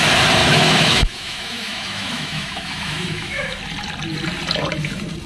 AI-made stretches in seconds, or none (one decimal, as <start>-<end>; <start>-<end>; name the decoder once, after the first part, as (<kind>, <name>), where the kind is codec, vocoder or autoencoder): 0.4-3.6 (autoencoder, DAC-VAE)